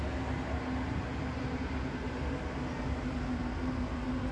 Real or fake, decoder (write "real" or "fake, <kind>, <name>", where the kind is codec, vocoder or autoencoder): real